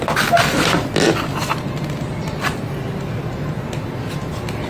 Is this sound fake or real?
real